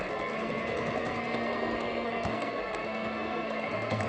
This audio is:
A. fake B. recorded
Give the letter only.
A